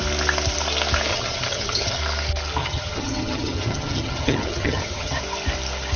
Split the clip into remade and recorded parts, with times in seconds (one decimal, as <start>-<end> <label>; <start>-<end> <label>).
0.0-1.1 recorded; 1.1-2.0 remade; 2.0-2.6 recorded; 2.6-5.2 remade; 5.2-6.0 recorded